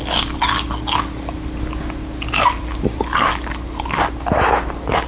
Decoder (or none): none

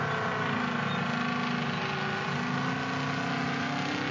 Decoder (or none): none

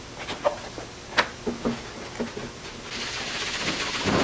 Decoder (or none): none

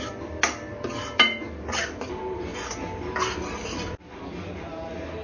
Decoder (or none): none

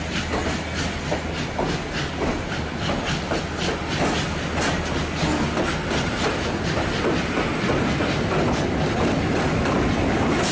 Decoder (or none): none